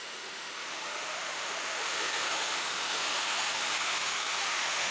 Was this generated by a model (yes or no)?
yes